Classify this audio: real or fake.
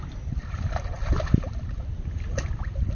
real